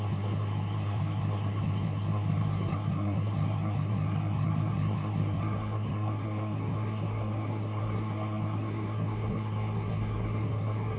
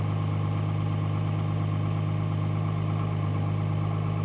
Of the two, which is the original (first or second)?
second